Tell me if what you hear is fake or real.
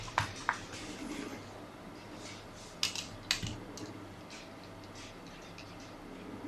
real